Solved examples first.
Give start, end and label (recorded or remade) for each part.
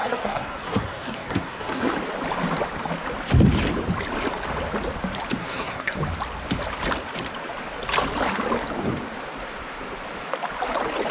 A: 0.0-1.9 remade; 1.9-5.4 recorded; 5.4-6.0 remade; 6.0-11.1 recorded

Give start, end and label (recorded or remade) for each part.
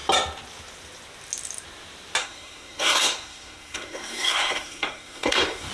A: 0.0-2.2 recorded; 2.2-5.7 remade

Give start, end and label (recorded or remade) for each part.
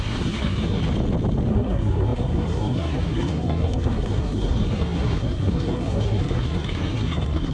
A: 0.0-0.8 remade; 0.8-1.5 recorded; 1.5-7.5 remade